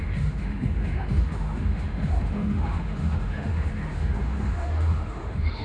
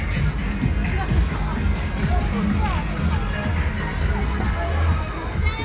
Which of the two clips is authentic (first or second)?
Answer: second